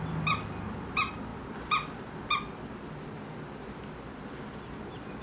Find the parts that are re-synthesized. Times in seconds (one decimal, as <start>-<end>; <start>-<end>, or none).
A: none